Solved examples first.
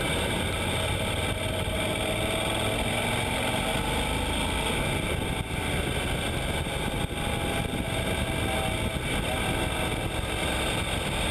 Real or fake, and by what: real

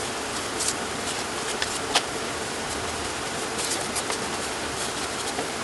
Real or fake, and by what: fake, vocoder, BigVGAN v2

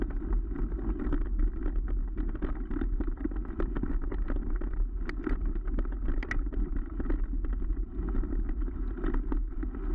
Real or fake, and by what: real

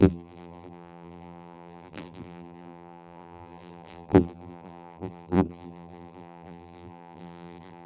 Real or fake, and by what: fake, vocoder, BigVGAN v2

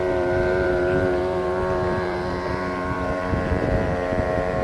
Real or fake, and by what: fake, vocoder, BigVGAN v2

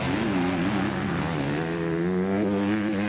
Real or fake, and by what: real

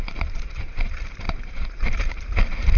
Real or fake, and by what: fake, vocoder, BigVGAN v2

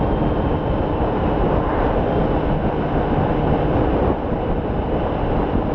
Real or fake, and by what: fake, vocoder, BigVGAN v2